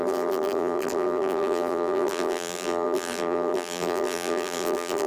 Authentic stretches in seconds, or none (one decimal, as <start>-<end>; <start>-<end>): none

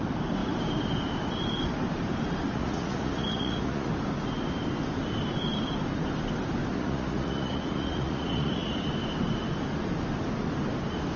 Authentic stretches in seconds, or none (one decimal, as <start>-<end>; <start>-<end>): 0.0-2.5; 3.9-6.7; 8.9-11.2

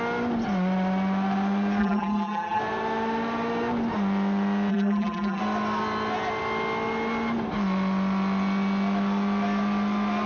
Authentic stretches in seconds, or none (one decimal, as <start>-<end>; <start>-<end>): 0.0-1.8; 2.6-4.7; 5.4-10.3

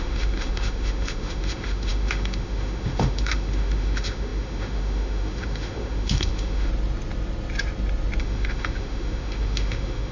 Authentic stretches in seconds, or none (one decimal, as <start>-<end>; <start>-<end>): 6.7-8.2

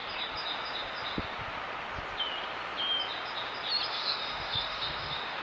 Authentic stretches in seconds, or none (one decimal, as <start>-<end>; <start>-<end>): 0.0-3.9

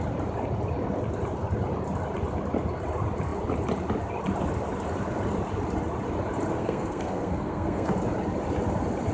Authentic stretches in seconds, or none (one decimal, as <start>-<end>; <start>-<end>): 0.0-6.5; 7.9-9.1